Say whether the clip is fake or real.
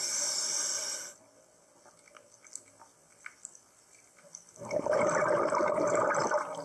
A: real